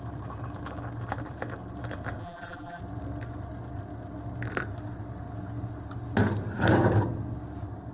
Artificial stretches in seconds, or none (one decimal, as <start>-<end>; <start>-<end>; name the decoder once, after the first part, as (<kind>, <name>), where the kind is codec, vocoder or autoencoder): 2.2-2.8 (vocoder, BigVGAN v2)